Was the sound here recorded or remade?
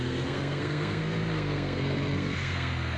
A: remade